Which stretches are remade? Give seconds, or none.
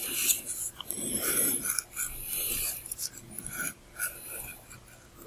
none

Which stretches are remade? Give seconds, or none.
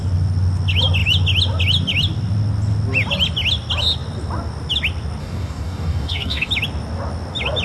5.2-6.5 (codec, DAC)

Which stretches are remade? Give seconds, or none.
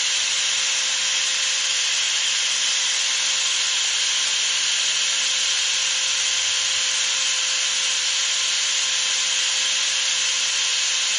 none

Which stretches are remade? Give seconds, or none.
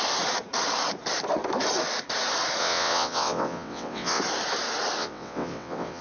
2.6-4.2 (vocoder, WaveNeXt); 5.0-6.0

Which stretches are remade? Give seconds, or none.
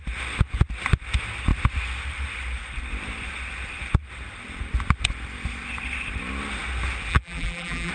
7.1-7.9 (vocoder, BigVGAN v2)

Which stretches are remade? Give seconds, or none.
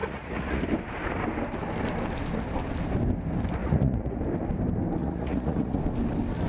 0.0-0.6 (vocoder, Vocos); 3.6-4.2; 5.0-5.8